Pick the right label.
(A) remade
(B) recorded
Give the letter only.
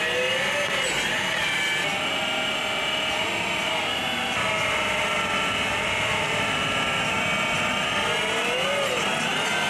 B